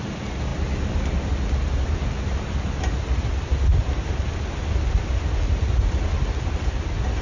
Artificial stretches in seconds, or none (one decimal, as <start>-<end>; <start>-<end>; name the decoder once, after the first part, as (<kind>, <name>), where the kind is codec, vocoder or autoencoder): none